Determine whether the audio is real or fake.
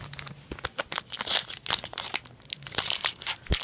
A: real